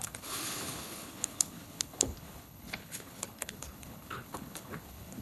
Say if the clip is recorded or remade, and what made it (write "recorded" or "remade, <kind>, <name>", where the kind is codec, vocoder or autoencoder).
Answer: remade, codec, HILCodec